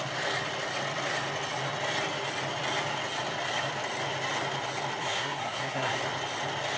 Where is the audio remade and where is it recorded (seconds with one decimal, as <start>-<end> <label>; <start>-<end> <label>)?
0.0-5.0 recorded; 5.0-6.0 remade; 6.0-6.8 recorded